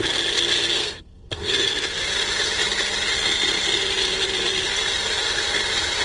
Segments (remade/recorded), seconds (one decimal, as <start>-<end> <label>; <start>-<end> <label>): 0.0-0.8 recorded; 0.8-1.5 remade; 1.5-6.0 recorded